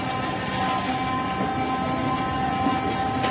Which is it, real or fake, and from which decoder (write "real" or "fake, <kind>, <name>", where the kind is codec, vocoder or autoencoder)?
real